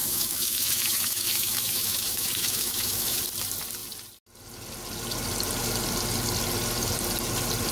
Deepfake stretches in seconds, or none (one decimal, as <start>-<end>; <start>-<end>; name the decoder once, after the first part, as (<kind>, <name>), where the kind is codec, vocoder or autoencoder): 0.0-3.2 (autoencoder, DAC-VAE)